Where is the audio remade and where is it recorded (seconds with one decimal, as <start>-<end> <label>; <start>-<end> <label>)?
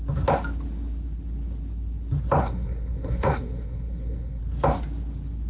0.0-2.4 recorded; 2.4-4.4 remade; 4.4-5.5 recorded